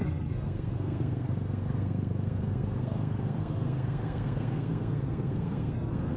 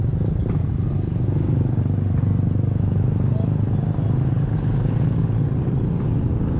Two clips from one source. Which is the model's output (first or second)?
first